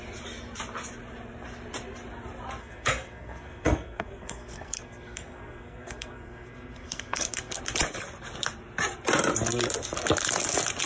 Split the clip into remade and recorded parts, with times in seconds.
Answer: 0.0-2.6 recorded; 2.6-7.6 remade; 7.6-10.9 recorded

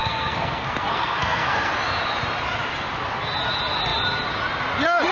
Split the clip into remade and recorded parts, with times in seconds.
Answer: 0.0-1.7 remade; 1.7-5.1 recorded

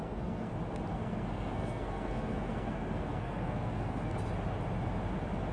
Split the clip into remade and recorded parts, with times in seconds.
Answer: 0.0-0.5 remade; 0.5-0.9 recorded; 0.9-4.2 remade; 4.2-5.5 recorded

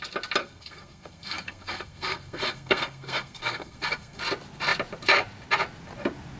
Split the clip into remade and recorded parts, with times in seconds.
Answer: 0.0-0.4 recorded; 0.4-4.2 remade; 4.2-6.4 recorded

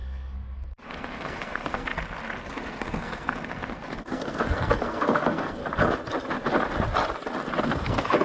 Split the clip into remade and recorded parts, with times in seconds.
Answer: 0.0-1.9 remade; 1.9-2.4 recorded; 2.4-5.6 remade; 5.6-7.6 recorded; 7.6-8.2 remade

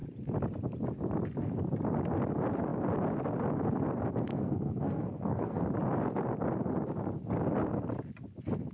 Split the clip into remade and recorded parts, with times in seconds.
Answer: 0.0-4.3 recorded; 4.3-5.6 remade; 5.6-8.7 recorded